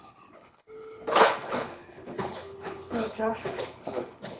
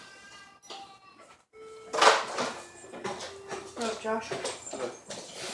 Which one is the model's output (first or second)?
first